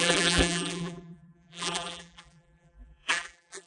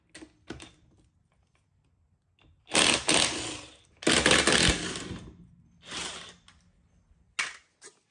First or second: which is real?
second